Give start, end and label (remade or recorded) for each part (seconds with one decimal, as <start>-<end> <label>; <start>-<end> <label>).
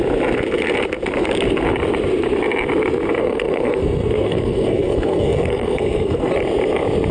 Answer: 0.0-3.2 recorded; 3.2-6.3 remade; 6.3-7.1 recorded